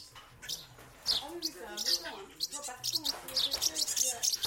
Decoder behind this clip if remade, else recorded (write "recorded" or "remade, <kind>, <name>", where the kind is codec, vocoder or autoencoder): recorded